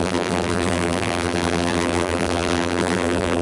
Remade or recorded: remade